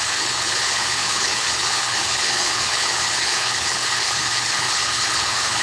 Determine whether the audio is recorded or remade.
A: remade